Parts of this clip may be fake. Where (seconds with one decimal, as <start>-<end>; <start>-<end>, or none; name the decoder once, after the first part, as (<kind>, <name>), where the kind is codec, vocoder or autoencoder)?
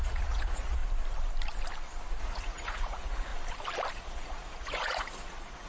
0.0-0.8 (vocoder, Vocos); 2.2-3.3; 3.9-5.7